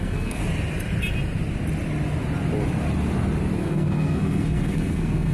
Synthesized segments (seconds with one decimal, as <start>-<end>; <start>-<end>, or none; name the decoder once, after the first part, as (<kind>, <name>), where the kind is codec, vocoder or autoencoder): 0.0-0.4 (codec, SNAC); 3.6-5.3